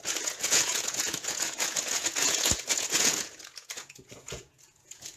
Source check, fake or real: fake